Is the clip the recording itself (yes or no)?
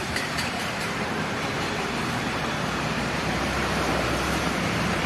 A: no